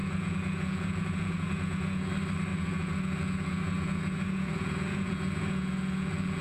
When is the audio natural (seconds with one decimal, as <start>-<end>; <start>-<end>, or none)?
2.1-2.5

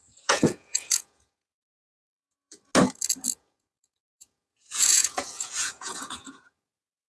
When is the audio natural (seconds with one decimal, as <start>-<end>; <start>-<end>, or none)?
2.7-3.4

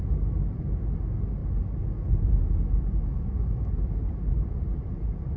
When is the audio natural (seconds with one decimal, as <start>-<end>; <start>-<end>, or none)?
0.0-5.4

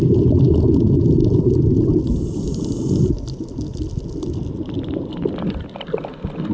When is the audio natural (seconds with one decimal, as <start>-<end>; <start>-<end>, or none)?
0.0-6.5

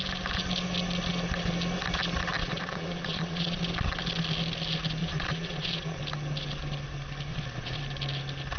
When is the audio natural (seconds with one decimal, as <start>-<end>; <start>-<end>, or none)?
0.0-2.4; 3.6-5.0; 6.0-7.3; 7.8-8.6